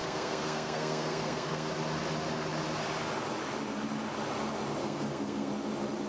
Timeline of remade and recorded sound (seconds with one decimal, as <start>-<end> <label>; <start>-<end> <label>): 0.0-1.7 remade; 1.7-4.8 recorded; 4.8-5.5 remade; 5.5-6.1 recorded